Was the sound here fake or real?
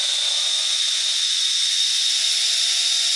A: fake